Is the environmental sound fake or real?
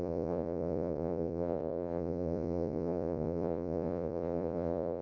fake